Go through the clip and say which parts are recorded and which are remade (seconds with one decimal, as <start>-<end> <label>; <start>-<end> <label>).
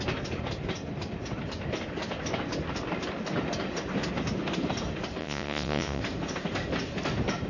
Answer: 0.0-5.2 recorded; 5.2-6.0 remade; 6.0-7.5 recorded